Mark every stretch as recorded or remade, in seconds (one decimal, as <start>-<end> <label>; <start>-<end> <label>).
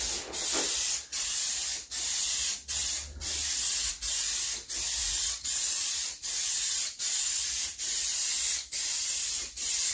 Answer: 0.0-5.0 recorded; 5.0-7.2 remade; 7.2-9.9 recorded